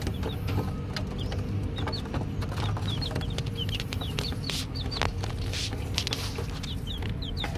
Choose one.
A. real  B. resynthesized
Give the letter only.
A